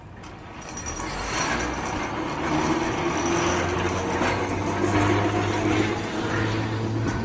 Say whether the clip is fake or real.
real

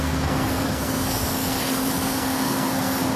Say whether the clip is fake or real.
fake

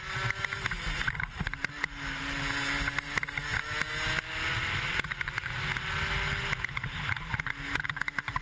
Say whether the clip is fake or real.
real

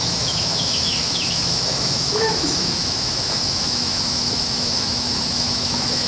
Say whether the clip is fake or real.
fake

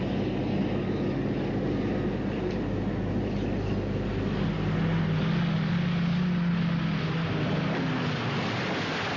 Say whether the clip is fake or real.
real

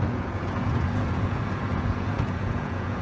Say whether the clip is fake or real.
fake